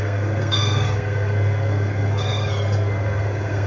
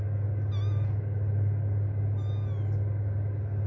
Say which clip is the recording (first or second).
second